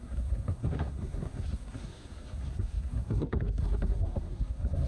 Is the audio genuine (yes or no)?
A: no